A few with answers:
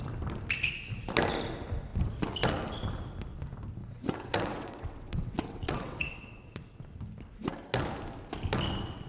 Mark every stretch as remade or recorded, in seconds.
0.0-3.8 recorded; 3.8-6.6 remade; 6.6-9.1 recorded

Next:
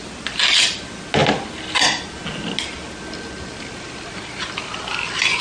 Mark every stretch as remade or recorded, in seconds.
0.0-5.4 recorded

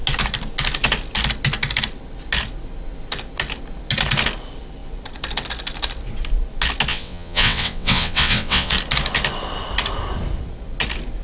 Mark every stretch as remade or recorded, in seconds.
0.0-6.9 recorded; 6.9-8.7 remade; 8.7-11.2 recorded

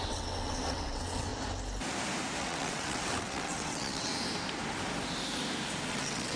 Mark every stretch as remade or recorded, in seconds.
0.0-1.3 remade; 1.3-2.4 recorded; 2.4-4.1 remade; 4.1-5.9 recorded; 5.9-6.4 remade

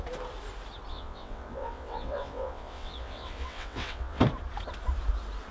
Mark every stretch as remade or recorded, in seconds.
0.0-0.9 recorded; 0.9-4.2 remade; 4.2-5.5 recorded

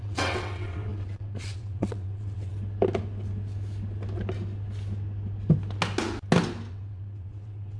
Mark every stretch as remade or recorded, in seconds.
0.0-2.5 remade; 2.5-6.7 recorded; 6.7-7.8 remade